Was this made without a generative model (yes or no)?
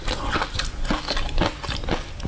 yes